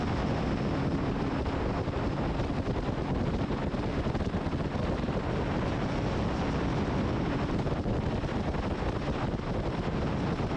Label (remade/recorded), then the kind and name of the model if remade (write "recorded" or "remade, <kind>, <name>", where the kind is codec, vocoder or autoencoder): recorded